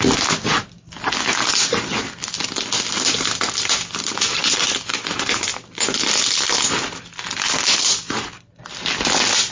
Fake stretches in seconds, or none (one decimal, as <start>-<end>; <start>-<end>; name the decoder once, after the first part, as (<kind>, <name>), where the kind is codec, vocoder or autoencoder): none